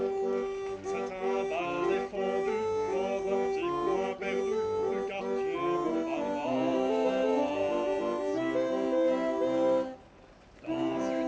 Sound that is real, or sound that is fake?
real